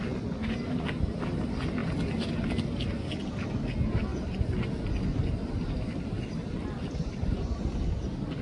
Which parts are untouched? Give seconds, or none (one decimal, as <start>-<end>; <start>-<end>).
0.0-8.4